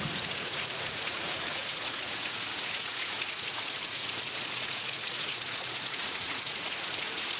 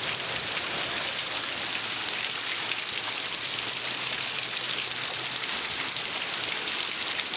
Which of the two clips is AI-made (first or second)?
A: first